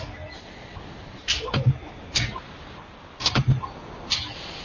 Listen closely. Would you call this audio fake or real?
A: real